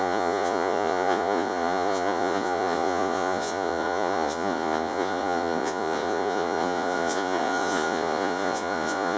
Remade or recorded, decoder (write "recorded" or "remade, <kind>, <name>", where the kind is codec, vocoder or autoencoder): remade, vocoder, Vocos